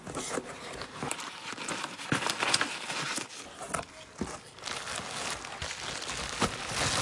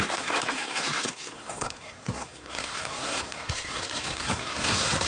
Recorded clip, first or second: first